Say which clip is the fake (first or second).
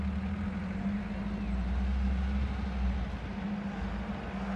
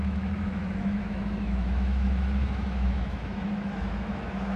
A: second